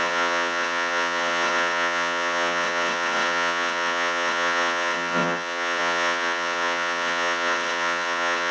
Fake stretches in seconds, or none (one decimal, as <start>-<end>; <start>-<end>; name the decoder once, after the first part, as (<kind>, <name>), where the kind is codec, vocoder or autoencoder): 0.0-8.5 (vocoder, WaveNeXt)